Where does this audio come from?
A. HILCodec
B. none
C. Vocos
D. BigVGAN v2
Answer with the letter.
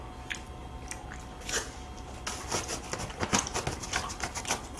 B